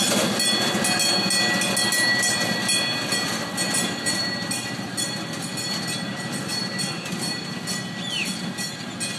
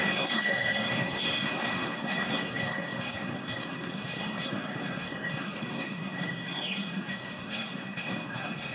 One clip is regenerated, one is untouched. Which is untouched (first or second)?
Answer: first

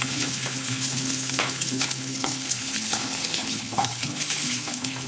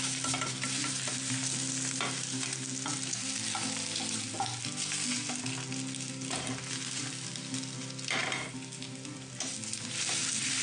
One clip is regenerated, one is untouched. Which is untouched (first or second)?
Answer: second